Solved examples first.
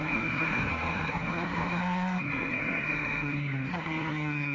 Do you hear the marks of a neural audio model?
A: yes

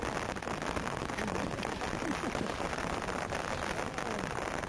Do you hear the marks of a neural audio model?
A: no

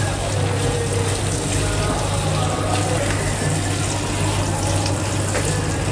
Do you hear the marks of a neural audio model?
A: no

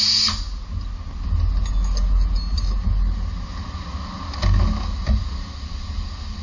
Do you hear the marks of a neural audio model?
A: no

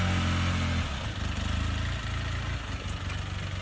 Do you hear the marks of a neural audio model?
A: no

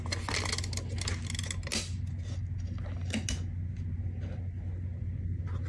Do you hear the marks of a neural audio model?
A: no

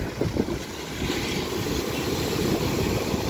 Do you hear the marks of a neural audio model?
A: no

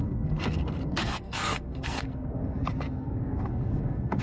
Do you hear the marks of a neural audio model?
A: yes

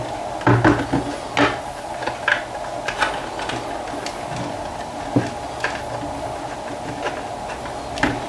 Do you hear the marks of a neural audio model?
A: no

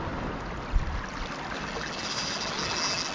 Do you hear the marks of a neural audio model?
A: no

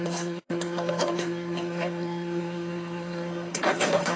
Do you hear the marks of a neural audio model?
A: yes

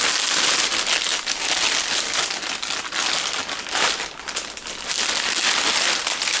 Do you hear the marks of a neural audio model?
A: no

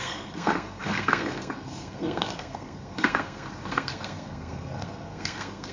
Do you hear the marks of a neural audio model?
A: yes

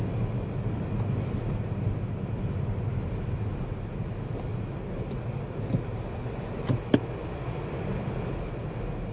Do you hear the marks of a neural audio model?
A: no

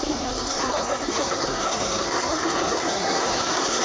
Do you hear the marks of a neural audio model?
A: yes